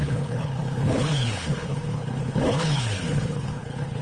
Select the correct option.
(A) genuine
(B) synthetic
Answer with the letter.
B